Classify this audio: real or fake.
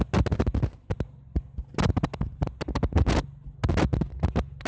real